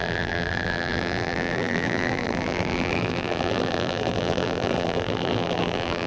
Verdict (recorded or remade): remade